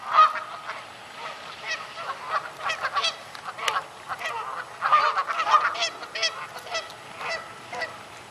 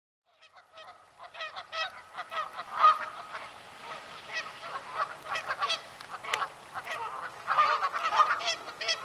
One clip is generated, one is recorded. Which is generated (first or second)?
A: second